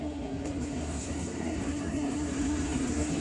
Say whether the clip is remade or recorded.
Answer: remade